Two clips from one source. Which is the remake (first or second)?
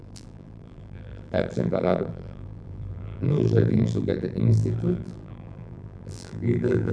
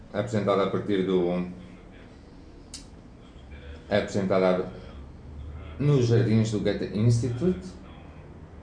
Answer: first